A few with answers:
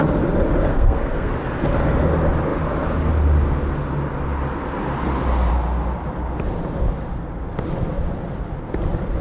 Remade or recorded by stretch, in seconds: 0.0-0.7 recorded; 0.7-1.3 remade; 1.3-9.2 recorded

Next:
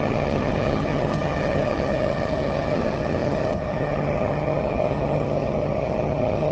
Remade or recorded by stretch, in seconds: 0.0-6.5 remade

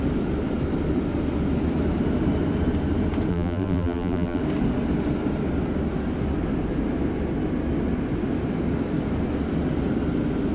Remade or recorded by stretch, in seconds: 0.0-3.3 recorded; 3.3-4.4 remade; 4.4-10.5 recorded

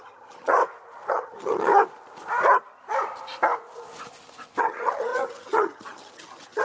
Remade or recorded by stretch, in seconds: 0.0-0.6 remade; 0.6-1.1 recorded; 1.1-1.7 remade; 1.7-4.6 recorded; 4.6-6.6 remade

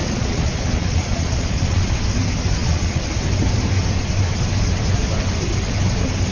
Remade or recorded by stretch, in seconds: 0.0-1.9 remade; 1.9-2.6 recorded; 2.6-3.1 remade; 3.1-6.3 recorded

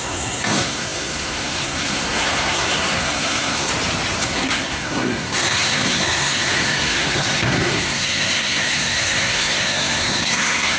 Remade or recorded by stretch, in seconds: 0.0-3.7 remade; 3.7-4.2 recorded; 4.2-10.8 remade

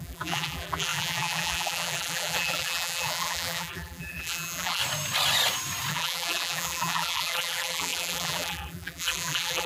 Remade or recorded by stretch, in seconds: 0.0-4.8 remade; 4.8-5.9 recorded; 5.9-9.7 remade

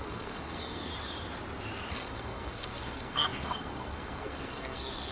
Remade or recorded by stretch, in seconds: 0.0-0.9 remade; 0.9-1.9 recorded; 1.9-5.1 remade